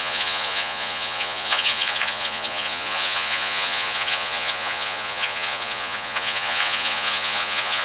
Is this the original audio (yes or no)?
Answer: no